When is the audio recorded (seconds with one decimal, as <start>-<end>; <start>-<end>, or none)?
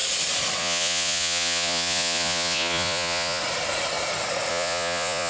0.0-0.6; 3.4-4.5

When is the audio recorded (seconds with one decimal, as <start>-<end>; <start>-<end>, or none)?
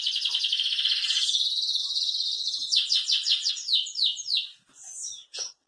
0.0-1.8; 3.5-5.7